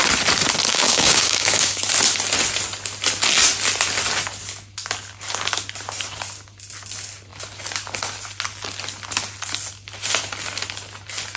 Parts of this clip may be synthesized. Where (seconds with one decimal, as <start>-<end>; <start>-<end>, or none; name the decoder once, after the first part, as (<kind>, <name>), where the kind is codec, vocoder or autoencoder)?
0.7-1.8 (codec, DAC)